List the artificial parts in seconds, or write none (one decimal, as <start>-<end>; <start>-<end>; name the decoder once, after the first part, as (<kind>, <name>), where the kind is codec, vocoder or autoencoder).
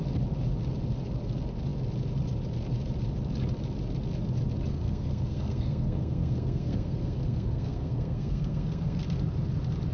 4.7-9.0 (codec, SNAC)